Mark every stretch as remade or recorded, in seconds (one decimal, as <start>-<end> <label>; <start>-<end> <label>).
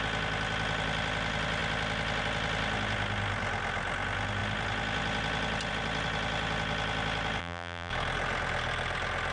0.0-7.4 recorded; 7.4-7.9 remade; 7.9-9.3 recorded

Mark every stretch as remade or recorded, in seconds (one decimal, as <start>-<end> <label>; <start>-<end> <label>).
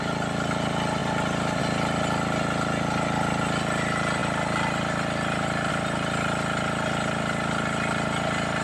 0.0-1.0 recorded; 1.0-1.6 remade; 1.6-8.6 recorded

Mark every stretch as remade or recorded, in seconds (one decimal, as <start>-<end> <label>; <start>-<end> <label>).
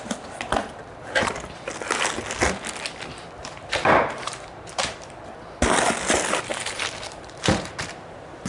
0.0-0.6 recorded; 0.6-1.3 remade; 1.3-3.4 recorded; 3.4-4.8 remade; 4.8-6.5 recorded; 6.5-7.7 remade; 7.7-8.5 recorded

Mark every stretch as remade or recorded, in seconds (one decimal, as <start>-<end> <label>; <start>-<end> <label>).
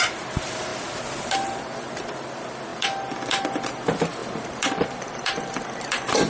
0.0-0.7 remade; 0.7-1.2 recorded; 1.2-6.3 remade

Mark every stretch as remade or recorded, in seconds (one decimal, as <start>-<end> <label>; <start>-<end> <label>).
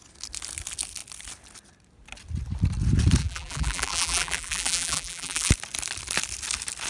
0.0-3.2 recorded; 3.2-5.5 remade; 5.5-6.9 recorded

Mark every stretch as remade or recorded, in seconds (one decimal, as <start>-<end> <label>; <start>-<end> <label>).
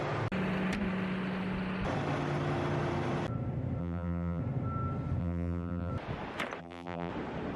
0.0-3.8 recorded; 3.8-4.4 remade; 4.4-5.2 recorded; 5.2-5.9 remade; 5.9-6.6 recorded; 6.6-7.1 remade; 7.1-7.6 recorded